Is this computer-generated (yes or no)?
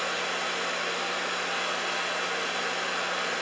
no